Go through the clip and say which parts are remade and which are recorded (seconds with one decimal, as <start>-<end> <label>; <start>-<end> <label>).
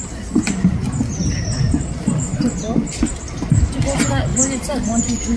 0.0-5.4 recorded